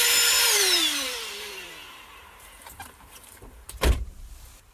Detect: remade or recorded remade